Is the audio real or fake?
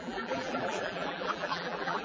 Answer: fake